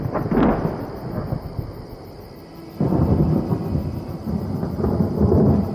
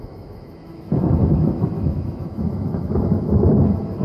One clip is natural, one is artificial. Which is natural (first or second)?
first